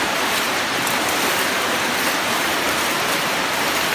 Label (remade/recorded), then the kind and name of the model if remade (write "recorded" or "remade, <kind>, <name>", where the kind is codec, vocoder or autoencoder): remade, vocoder, BigVGAN v2